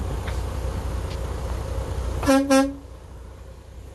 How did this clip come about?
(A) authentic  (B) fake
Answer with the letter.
A